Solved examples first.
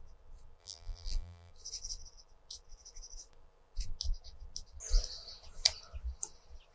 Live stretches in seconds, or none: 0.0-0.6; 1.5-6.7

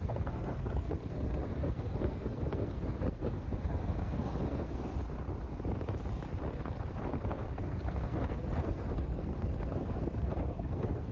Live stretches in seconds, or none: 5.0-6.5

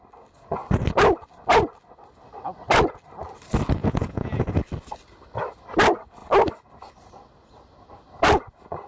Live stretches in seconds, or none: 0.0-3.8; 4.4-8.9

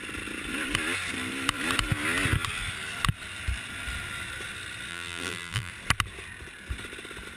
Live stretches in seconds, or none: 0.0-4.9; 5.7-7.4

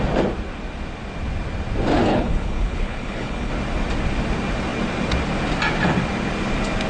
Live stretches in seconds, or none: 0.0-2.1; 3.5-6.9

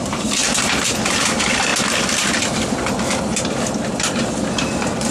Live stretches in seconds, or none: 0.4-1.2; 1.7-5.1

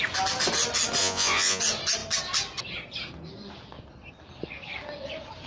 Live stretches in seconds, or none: 0.0-1.0; 1.6-5.5